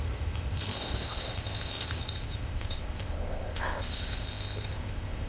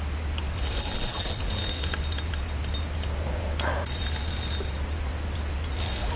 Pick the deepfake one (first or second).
first